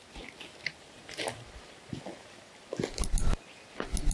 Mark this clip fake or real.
real